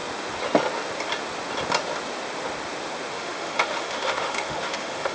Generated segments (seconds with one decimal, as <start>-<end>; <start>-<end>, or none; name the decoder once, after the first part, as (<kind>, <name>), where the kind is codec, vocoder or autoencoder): 3.1-5.1 (autoencoder, DAC-VAE)